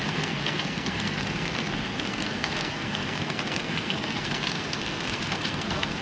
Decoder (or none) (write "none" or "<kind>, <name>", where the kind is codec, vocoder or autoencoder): codec, SNAC